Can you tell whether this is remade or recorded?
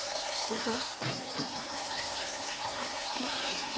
remade